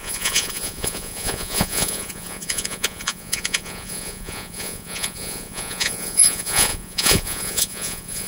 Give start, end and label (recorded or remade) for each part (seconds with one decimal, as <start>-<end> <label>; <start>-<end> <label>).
0.0-8.3 remade